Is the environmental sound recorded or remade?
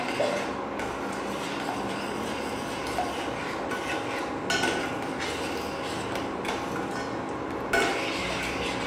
recorded